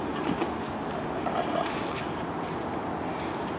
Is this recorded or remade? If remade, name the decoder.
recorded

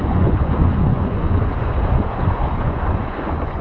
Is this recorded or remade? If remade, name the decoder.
remade, vocoder, Vocos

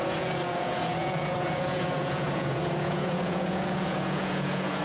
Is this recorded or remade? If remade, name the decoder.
remade, vocoder, Vocos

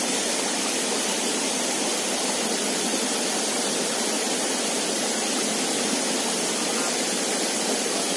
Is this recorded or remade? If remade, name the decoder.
recorded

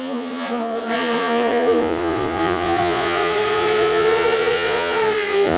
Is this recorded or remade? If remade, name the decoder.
remade, vocoder, Vocos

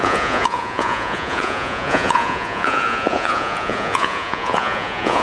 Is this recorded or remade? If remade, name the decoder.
remade, vocoder, Vocos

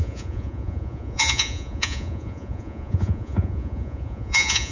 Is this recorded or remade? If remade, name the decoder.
remade, vocoder, Vocos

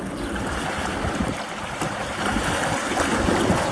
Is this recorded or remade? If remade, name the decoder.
recorded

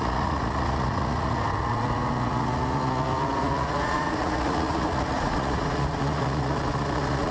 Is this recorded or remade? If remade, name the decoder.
remade, vocoder, Vocos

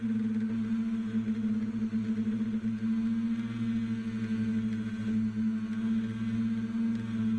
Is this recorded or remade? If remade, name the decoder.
recorded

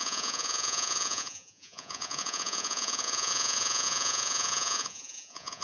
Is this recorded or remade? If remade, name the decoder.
remade, vocoder, Vocos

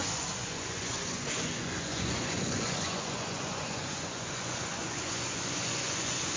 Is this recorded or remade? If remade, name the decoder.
remade, vocoder, Vocos